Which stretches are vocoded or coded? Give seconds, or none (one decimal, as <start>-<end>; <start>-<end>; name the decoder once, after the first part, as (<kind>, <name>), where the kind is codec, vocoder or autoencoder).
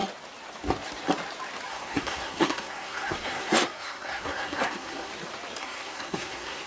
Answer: 1.7-5.1 (codec, SNAC); 5.6-6.7